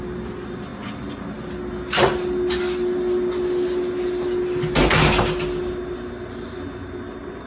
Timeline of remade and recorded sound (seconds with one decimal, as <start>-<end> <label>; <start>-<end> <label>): 0.0-7.5 recorded